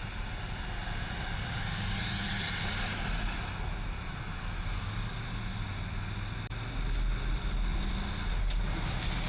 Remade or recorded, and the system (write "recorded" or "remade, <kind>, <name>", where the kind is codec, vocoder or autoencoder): recorded